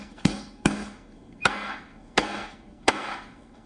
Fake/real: fake